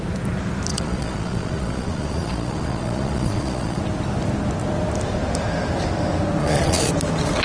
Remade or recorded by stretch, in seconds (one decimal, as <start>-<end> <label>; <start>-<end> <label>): 0.0-0.7 recorded; 0.7-3.8 remade; 3.8-6.4 recorded; 6.4-6.9 remade; 6.9-7.4 recorded